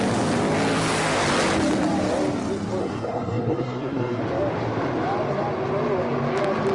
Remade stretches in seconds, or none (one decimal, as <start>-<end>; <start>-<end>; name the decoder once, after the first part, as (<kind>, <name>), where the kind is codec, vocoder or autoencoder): 2.8-4.2 (codec, SNAC)